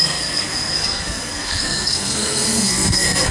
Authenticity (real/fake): fake